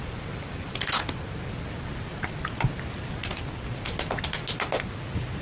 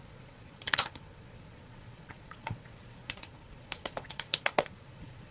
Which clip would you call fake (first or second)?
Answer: second